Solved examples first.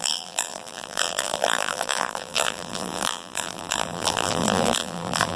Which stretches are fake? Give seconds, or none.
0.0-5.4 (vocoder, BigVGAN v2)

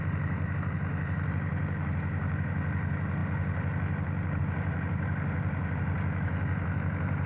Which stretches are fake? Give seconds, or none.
none